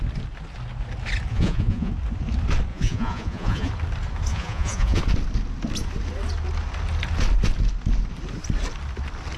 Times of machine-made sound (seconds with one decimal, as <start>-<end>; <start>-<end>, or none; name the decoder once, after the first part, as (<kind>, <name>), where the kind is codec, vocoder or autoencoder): 1.3-1.9 (vocoder, Vocos); 2.7-3.7; 4.3-5.0